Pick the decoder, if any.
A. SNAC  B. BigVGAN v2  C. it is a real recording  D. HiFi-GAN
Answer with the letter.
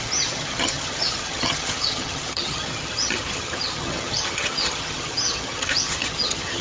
D